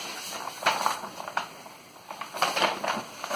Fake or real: real